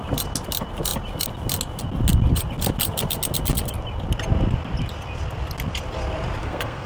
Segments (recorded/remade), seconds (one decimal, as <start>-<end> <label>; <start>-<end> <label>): 0.0-6.4 recorded; 6.4-6.9 remade